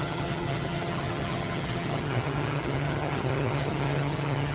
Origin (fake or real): fake